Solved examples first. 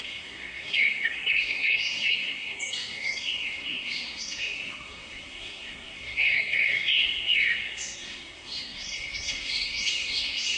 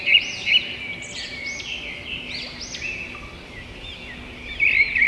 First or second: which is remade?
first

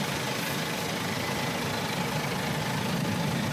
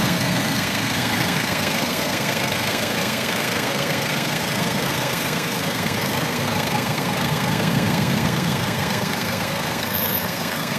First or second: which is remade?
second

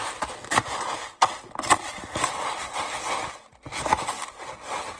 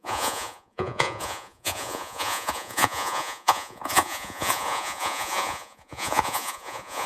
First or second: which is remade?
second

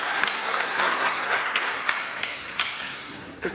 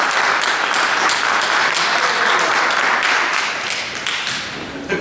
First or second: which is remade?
first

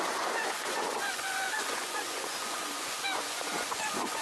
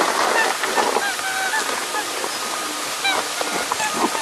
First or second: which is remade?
first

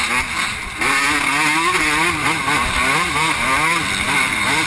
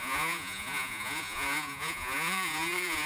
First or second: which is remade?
second